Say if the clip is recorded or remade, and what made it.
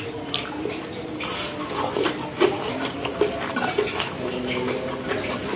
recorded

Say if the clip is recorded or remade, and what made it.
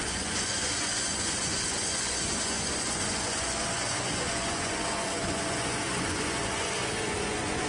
remade, vocoder, Vocos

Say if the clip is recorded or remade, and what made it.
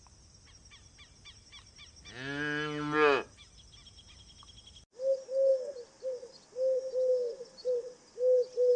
recorded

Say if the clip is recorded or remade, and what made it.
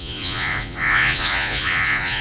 remade, vocoder, Vocos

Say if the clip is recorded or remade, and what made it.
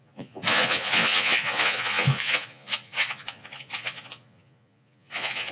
remade, vocoder, Vocos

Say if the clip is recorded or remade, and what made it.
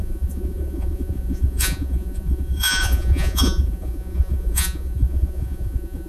remade, vocoder, Vocos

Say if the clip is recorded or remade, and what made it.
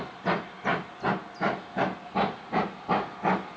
recorded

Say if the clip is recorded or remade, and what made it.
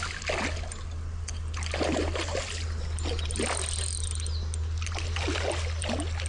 recorded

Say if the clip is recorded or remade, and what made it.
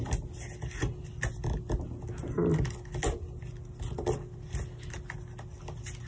recorded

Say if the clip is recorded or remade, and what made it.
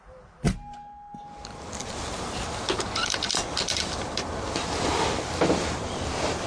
recorded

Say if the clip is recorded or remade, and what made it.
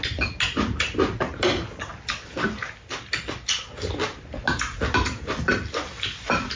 recorded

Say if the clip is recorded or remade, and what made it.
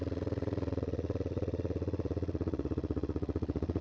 remade, vocoder, Vocos